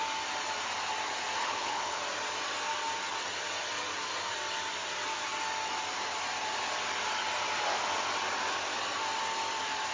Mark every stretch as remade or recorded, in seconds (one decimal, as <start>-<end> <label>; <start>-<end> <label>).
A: 0.0-1.4 recorded; 1.4-2.0 remade; 2.0-9.9 recorded